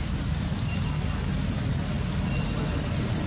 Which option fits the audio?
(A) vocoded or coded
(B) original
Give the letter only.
B